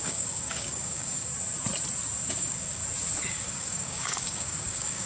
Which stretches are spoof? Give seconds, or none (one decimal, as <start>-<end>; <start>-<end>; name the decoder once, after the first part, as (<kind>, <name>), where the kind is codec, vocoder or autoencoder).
0.0-1.3 (codec, DAC); 2.3-2.8; 3.3-5.1